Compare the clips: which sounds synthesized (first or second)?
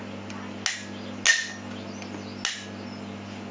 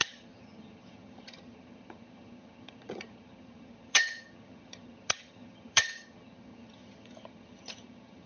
second